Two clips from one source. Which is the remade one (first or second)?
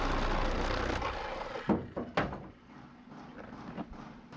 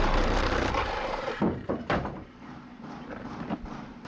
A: second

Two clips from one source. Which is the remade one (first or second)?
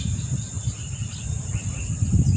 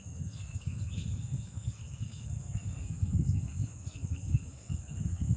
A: second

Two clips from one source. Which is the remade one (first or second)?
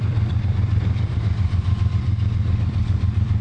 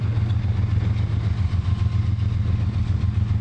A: first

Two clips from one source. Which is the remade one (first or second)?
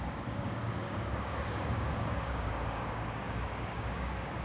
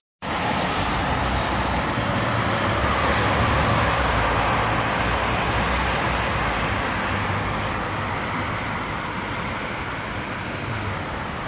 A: first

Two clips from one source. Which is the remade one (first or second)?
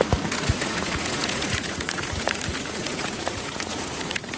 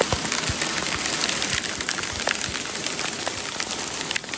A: first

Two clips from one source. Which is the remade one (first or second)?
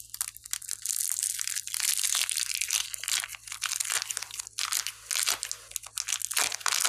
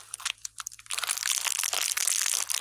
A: second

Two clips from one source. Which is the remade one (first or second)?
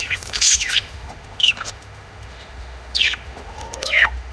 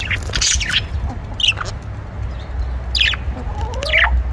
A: first